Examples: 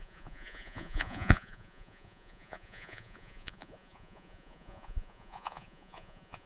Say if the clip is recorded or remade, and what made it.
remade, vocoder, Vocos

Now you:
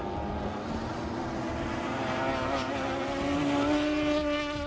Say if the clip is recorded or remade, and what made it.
recorded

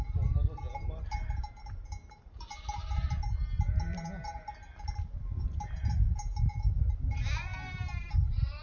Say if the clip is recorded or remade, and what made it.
recorded